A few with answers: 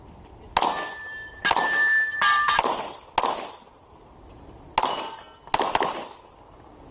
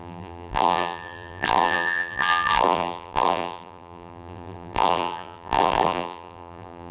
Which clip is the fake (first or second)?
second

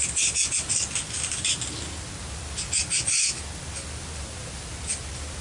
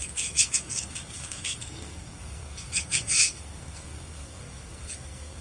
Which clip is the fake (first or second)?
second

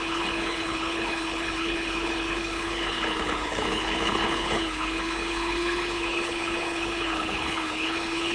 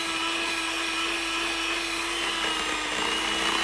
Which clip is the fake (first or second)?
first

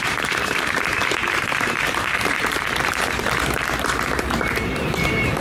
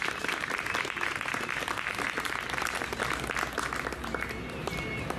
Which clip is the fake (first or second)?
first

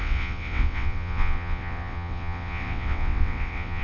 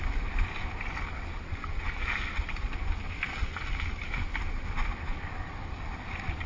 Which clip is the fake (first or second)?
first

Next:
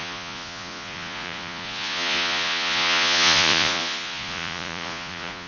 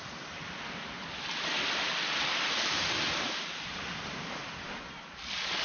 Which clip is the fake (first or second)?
first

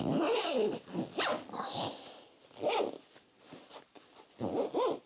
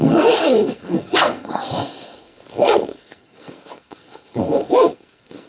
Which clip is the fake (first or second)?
second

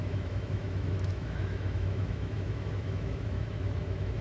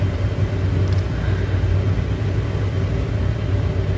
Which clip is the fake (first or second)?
first